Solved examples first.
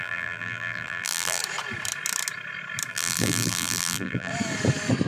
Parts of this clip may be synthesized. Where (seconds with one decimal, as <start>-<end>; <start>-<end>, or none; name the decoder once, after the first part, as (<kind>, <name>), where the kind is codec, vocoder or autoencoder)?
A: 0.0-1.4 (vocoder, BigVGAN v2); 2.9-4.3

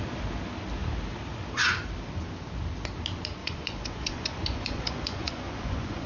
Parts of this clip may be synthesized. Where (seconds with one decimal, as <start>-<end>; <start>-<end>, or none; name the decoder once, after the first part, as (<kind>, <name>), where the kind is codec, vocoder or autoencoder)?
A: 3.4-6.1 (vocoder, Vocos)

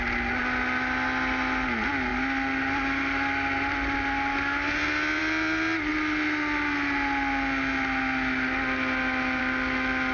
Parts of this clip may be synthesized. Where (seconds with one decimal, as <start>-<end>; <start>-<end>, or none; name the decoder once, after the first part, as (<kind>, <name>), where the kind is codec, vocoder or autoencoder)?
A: none